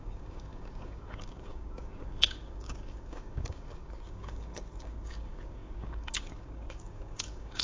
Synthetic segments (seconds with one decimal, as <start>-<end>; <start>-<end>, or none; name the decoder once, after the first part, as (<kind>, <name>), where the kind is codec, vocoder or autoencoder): 0.0-7.6 (codec, DAC)